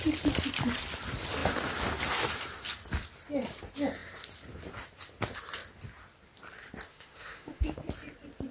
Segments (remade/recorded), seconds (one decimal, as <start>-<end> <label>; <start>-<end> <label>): 0.0-6.9 recorded; 6.9-7.9 remade; 7.9-8.5 recorded